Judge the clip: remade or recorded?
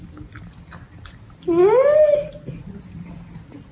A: recorded